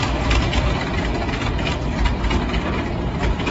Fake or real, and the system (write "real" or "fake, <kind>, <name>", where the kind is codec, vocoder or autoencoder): real